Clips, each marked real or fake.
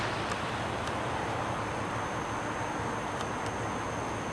real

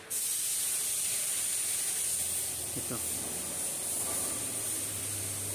real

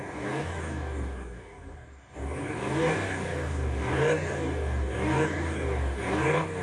fake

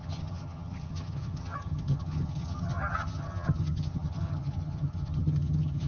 fake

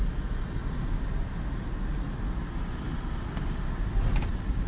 real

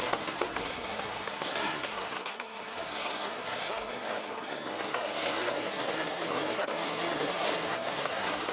fake